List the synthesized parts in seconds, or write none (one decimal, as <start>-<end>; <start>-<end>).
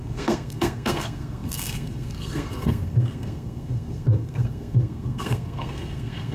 0.0-6.3